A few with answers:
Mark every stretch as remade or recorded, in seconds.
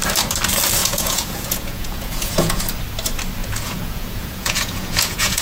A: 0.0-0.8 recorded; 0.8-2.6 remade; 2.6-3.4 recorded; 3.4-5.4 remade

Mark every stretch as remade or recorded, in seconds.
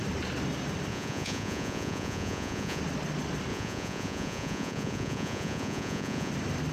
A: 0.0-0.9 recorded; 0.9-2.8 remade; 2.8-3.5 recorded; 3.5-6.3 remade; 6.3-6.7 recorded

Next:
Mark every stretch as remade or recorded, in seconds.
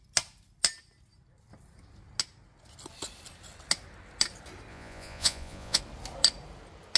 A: 0.0-4.7 recorded; 4.7-5.8 remade; 5.8-7.0 recorded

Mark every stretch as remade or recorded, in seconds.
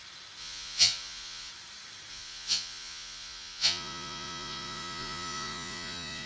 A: 0.0-0.4 recorded; 0.4-1.5 remade; 1.5-2.1 recorded; 2.1-6.3 remade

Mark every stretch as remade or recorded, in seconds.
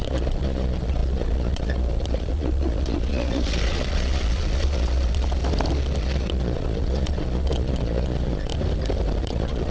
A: 0.0-5.4 remade; 5.4-6.0 recorded; 6.0-8.5 remade; 8.5-9.2 recorded; 9.2-9.7 remade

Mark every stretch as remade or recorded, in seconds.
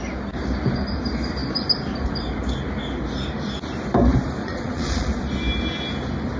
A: 0.0-4.4 recorded; 4.4-5.2 remade; 5.2-6.4 recorded